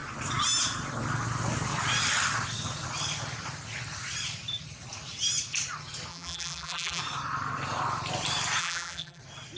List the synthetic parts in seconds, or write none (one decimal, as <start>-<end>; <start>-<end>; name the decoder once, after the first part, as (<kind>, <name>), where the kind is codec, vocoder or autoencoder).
6.1-7.0 (vocoder, BigVGAN v2); 8.6-9.2